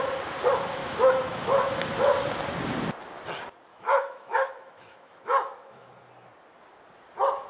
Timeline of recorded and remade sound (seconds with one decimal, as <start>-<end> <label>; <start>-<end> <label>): 0.0-0.8 recorded; 0.8-1.7 remade; 1.7-3.7 recorded; 3.7-5.9 remade; 5.9-7.5 recorded

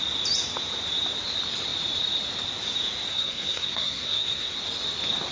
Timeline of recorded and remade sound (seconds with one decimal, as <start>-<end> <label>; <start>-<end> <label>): 0.0-3.1 recorded; 3.1-4.6 remade; 4.6-5.3 recorded

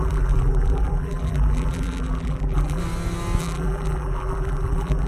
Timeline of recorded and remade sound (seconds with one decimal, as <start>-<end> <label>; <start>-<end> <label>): 0.0-2.8 remade; 2.8-3.4 recorded; 3.4-5.1 remade

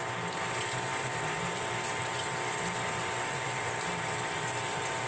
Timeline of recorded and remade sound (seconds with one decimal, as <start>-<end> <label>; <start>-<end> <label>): 0.0-0.9 recorded; 0.9-4.0 remade; 4.0-5.1 recorded

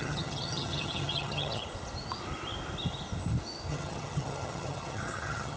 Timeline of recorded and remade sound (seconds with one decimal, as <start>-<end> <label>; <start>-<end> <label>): 0.0-1.6 remade; 1.6-3.7 recorded; 3.7-5.6 remade

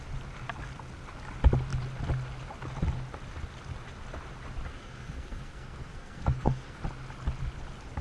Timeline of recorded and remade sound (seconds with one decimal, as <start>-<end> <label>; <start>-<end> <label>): 0.0-4.7 recorded; 4.7-6.8 remade; 6.8-8.0 recorded

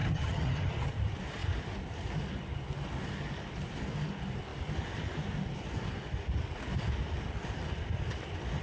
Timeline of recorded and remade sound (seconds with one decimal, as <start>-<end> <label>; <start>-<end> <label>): 0.0-0.9 remade; 0.9-8.6 recorded